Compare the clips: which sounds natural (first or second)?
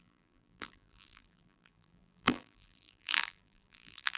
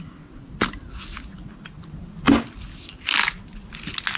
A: second